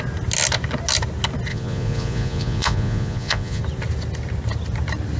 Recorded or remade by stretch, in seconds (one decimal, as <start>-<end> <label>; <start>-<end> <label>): 0.0-1.5 recorded; 1.5-3.6 remade; 3.6-5.2 recorded